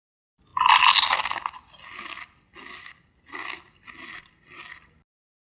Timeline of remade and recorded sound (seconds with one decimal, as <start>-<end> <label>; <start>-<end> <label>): 0.0-5.5 recorded